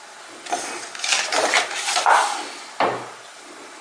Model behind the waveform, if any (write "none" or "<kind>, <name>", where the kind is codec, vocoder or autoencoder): none